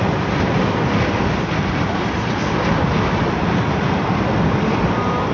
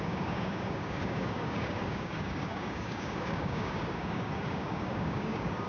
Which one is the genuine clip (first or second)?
first